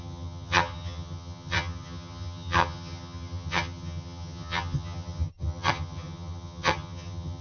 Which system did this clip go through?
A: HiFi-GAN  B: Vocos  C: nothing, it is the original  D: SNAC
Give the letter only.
A